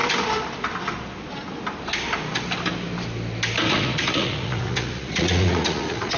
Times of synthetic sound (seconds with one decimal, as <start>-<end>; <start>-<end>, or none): 3.7-6.2